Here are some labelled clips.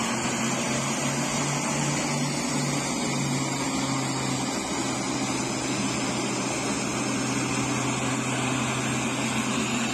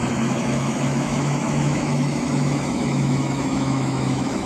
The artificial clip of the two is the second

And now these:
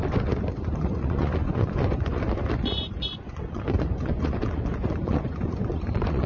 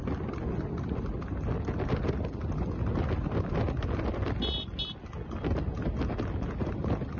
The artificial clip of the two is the first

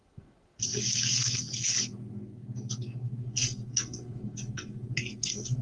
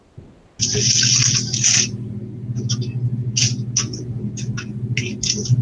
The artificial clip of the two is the first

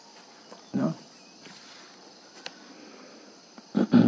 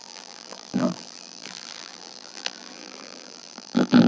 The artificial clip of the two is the second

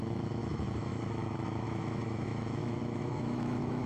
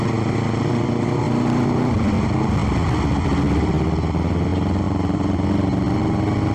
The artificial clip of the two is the first